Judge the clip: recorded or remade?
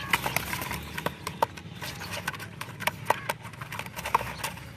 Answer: recorded